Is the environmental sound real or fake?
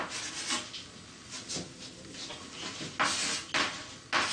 real